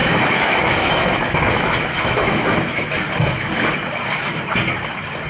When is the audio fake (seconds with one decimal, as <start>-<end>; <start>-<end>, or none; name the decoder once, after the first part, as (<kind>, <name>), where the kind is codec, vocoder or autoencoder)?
0.0-2.9 (autoencoder, DAC-VAE)